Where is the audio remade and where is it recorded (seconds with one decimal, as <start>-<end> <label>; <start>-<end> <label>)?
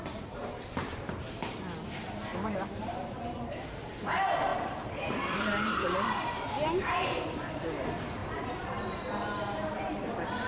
0.0-10.5 remade